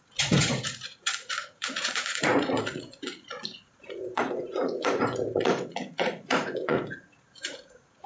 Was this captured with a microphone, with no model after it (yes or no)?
no